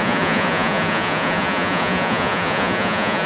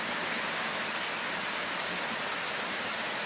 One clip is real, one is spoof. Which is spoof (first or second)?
first